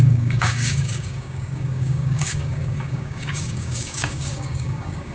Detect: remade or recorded remade